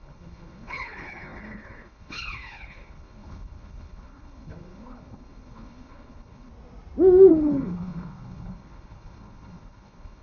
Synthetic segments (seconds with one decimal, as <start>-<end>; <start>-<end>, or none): 0.0-6.5; 7.3-10.2